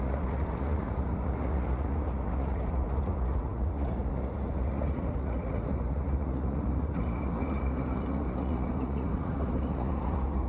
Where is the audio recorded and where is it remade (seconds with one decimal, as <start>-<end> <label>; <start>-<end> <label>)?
0.0-10.5 remade